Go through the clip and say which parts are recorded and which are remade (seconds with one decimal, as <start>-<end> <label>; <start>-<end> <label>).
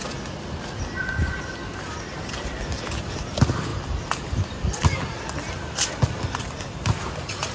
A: 0.0-3.7 recorded; 3.7-5.5 remade; 5.5-7.5 recorded